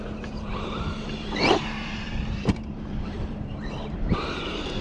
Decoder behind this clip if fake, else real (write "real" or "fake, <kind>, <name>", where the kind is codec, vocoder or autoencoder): fake, vocoder, BigVGAN v2